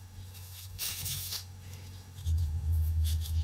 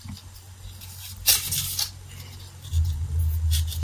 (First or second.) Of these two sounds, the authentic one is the second